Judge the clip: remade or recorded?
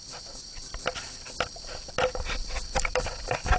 recorded